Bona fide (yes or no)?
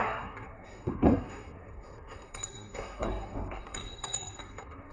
no